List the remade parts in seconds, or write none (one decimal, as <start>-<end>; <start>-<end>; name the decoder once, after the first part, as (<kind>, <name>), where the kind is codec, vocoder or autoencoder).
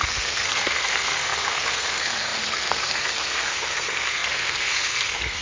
0.0-5.4 (codec, SNAC)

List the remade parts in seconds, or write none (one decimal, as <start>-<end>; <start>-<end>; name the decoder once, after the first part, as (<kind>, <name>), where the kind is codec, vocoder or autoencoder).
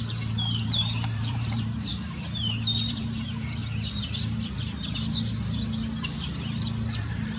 0.0-1.9 (vocoder, BigVGAN v2); 2.9-3.6; 7.0-7.4